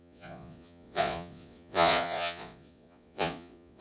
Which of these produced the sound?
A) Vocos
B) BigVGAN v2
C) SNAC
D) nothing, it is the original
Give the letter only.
A